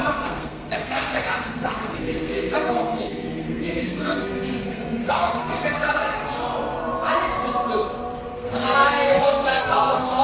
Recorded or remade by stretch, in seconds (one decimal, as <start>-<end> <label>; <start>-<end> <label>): 0.0-6.2 remade; 6.2-8.3 recorded; 8.3-10.2 remade